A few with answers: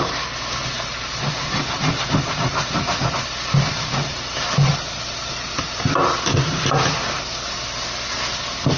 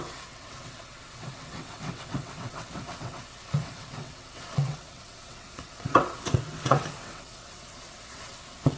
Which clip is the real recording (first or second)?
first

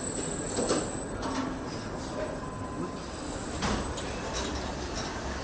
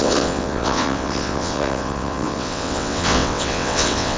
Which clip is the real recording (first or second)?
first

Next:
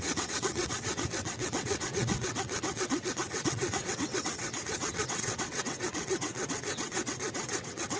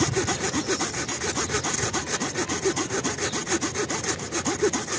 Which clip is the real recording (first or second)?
second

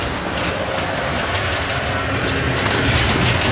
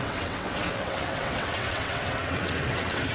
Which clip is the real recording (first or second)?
first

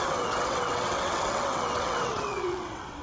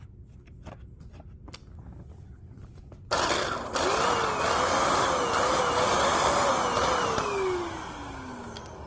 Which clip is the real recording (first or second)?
second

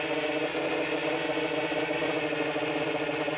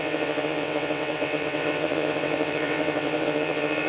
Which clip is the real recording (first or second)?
first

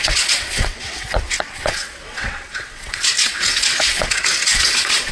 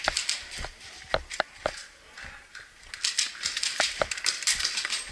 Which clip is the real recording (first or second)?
second